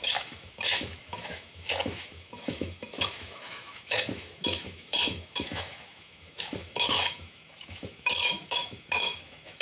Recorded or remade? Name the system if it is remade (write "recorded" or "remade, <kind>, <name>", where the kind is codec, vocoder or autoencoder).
remade, autoencoder, DAC-VAE